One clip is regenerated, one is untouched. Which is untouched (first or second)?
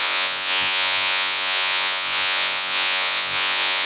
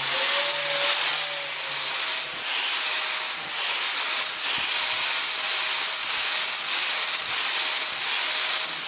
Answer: second